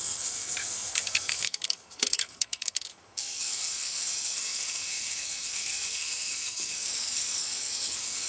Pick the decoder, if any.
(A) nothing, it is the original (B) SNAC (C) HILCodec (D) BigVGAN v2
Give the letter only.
B